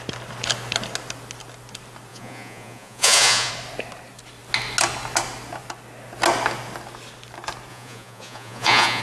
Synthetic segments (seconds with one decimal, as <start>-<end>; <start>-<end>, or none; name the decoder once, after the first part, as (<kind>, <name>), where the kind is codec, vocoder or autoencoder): 2.1-3.5 (vocoder, Vocos); 7.7-9.0